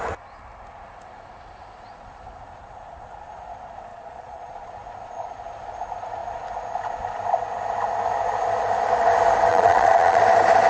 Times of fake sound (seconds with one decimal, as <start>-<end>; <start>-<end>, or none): 3.9-4.7; 9.5-10.2